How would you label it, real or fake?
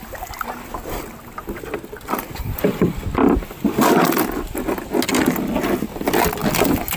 real